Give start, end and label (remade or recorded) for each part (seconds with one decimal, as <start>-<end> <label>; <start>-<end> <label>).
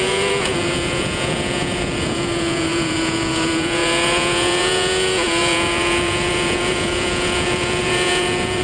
0.0-8.6 remade